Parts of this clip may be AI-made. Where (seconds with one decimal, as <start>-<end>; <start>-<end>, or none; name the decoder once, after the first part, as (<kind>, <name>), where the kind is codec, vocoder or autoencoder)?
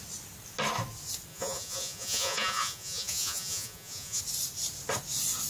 1.3-4.2 (vocoder, Vocos)